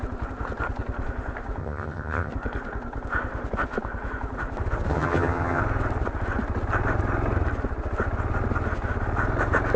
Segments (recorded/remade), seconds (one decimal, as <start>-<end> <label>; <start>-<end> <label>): 0.0-1.6 recorded; 1.6-2.3 remade; 2.3-4.9 recorded; 4.9-5.6 remade; 5.6-9.8 recorded